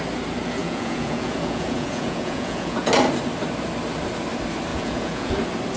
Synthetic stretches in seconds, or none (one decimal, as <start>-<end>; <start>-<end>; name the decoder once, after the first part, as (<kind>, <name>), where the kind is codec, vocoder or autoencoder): 0.6-2.9 (vocoder, Vocos); 4.7-5.3

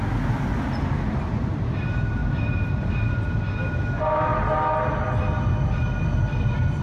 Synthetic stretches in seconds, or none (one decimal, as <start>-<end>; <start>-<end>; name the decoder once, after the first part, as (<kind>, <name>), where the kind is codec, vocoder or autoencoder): 2.2-3.3 (vocoder, BigVGAN v2)